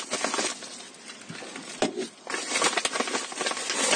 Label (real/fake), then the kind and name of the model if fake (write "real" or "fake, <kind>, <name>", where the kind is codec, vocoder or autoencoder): real